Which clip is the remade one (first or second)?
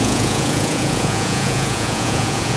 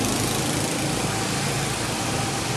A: first